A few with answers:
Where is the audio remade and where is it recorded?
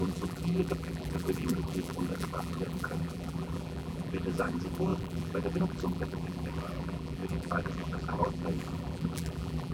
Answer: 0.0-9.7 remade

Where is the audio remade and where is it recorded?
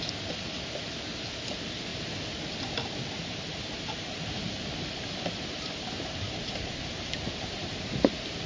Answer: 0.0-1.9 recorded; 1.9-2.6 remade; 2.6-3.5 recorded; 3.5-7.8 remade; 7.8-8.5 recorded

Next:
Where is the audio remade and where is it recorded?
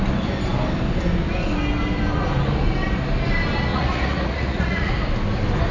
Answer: 0.0-3.7 recorded; 3.7-4.9 remade; 4.9-5.7 recorded